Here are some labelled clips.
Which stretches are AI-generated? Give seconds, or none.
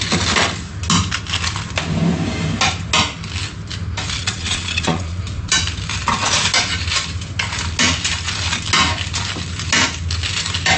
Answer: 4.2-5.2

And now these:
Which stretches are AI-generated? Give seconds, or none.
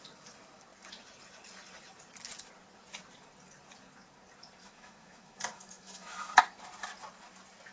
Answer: 4.6-6.4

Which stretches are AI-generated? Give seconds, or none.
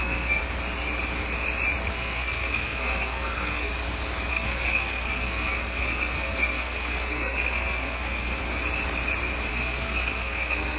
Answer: 0.0-0.4; 1.9-3.7; 4.3-8.4; 9.5-10.8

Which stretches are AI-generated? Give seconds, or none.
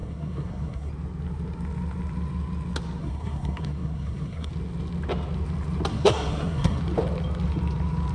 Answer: 0.0-0.9; 3.0-4.5; 5.9-6.8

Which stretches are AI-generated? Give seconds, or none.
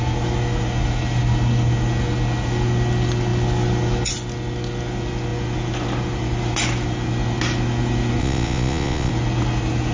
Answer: 8.2-9.1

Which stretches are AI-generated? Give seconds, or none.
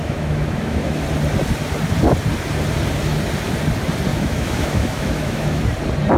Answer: 0.0-1.0; 4.1-5.6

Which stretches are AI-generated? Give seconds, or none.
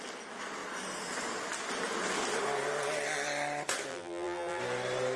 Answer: 3.9-4.6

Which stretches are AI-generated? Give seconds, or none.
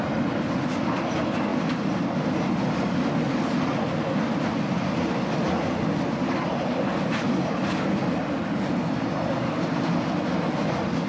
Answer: none